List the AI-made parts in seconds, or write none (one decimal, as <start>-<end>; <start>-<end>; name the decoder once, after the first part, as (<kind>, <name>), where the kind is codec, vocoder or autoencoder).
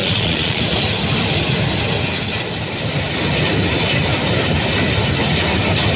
0.0-0.6 (vocoder, Vocos)